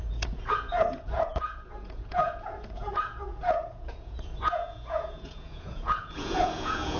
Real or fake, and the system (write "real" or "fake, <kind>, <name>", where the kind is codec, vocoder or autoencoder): fake, vocoder, Vocos